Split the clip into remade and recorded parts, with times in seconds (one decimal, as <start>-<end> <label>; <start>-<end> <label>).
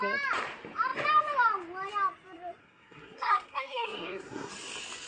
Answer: 0.0-2.6 recorded; 2.6-4.5 remade; 4.5-5.1 recorded